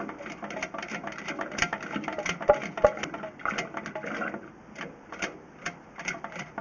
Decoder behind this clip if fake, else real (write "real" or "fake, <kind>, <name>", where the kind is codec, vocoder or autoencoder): real